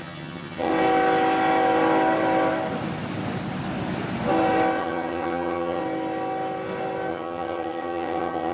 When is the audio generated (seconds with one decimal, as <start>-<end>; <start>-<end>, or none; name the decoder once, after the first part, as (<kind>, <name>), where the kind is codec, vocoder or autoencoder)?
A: 0.0-0.7 (vocoder, HiFi-GAN); 4.8-5.8; 7.1-8.5